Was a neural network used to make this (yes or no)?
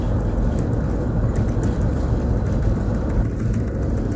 no